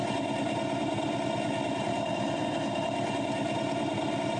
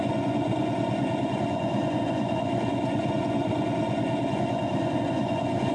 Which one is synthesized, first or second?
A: second